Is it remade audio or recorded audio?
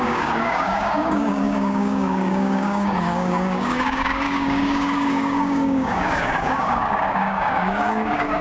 remade